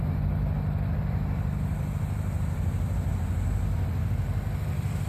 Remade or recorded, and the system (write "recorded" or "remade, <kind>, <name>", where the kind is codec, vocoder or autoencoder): remade, vocoder, BigVGAN v2